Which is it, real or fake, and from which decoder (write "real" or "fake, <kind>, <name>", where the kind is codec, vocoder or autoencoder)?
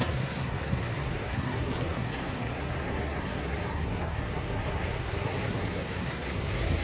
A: fake, codec, SNAC